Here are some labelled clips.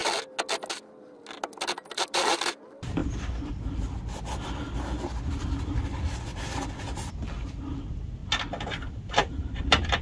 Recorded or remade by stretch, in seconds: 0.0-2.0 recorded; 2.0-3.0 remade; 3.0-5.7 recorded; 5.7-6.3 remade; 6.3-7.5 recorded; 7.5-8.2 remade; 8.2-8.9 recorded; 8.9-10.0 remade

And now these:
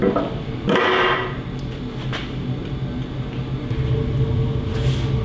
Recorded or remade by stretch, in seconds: 0.0-5.2 recorded

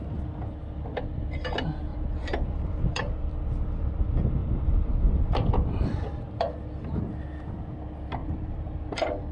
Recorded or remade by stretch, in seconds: 0.0-1.9 recorded; 1.9-3.3 remade; 3.3-4.4 recorded; 4.4-5.5 remade; 5.5-8.2 recorded; 8.2-9.3 remade